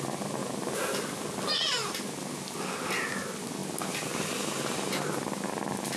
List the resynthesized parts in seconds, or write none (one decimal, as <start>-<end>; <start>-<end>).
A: none